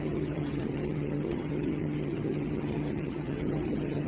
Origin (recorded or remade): remade